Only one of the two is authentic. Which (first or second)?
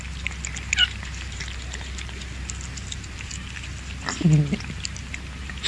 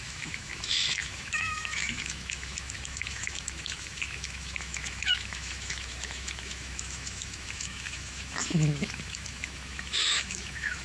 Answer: first